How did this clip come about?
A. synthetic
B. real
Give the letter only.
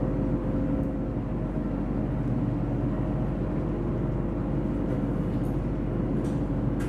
B